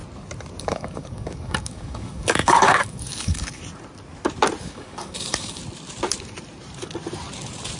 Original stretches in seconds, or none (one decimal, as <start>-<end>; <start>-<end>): 0.0-0.6; 3.6-4.6; 5.6-7.8